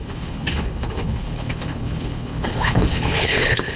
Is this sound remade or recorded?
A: remade